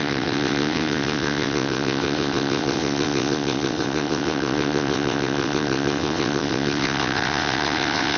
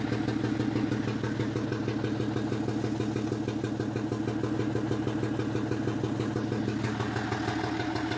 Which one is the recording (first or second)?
second